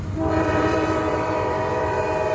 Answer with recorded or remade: remade